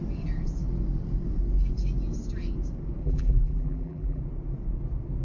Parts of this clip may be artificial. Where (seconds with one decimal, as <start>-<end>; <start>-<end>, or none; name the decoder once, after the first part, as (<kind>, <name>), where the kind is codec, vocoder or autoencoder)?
3.0-4.2 (vocoder, BigVGAN v2)